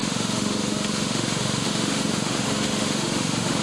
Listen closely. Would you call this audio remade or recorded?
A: remade